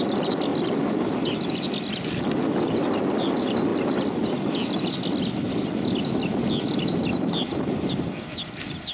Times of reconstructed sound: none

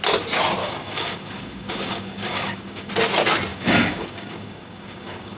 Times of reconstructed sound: 0.6-2.9; 3.5-5.4

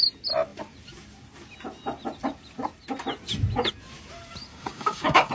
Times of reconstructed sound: 4.5-5.3

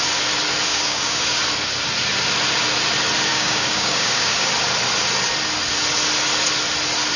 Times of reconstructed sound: 0.7-1.4; 3.3-4.5

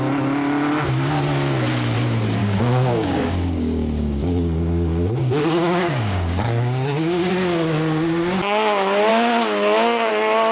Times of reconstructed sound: 2.4-7.3; 9.1-10.1

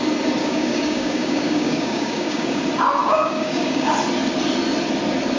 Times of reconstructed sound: 0.4-2.6; 3.0-3.9